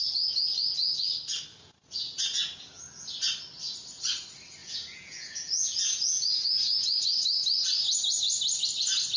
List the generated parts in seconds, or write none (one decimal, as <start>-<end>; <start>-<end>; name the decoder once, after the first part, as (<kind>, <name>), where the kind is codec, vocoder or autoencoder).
1.5-2.8 (vocoder, Vocos); 4.6-7.0